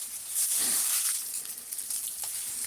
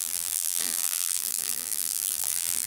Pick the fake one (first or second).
second